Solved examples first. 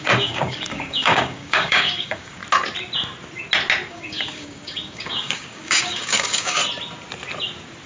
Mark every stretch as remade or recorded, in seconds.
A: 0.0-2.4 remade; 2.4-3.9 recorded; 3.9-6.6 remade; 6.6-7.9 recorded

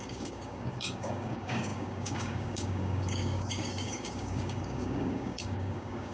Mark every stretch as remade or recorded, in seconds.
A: 0.0-6.1 remade

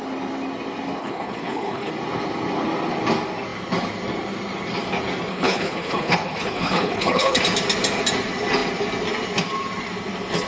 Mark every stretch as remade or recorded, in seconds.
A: 0.0-1.0 recorded; 1.0-1.9 remade; 1.9-5.3 recorded; 5.3-7.4 remade; 7.4-10.5 recorded

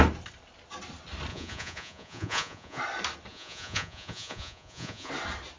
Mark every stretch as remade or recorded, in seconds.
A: 0.0-1.3 recorded; 1.3-2.8 remade; 2.8-3.3 recorded; 3.3-5.1 remade; 5.1-5.6 recorded